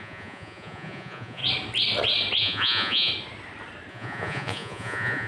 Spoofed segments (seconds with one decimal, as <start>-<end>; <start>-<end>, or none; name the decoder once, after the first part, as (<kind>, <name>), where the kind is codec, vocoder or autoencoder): 0.0-1.4 (vocoder, Vocos); 2.4-3.1; 3.9-5.3